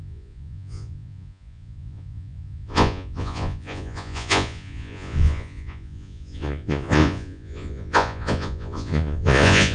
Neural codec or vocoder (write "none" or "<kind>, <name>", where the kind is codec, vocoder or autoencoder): vocoder, Vocos